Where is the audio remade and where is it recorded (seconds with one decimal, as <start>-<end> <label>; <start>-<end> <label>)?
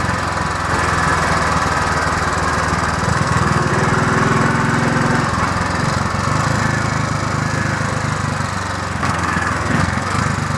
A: 0.0-3.1 recorded; 3.1-3.7 remade; 3.7-9.0 recorded; 9.0-10.2 remade; 10.2-10.6 recorded